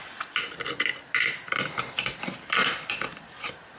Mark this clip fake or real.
real